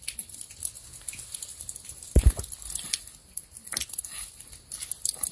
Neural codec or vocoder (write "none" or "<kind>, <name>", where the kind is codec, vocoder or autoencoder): none